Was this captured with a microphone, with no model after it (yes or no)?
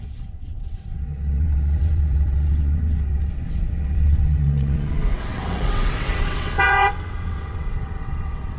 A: no